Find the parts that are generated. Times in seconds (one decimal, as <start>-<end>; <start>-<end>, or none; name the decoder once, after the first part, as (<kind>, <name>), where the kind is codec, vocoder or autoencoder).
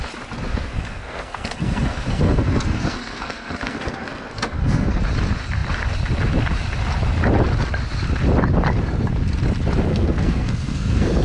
0.5-5.0 (codec, SNAC); 9.9-11.2